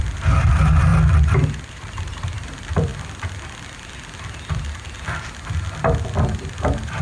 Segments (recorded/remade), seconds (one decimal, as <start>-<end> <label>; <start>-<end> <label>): 0.0-0.9 remade; 0.9-1.7 recorded; 1.7-2.9 remade; 2.9-6.5 recorded; 6.5-7.0 remade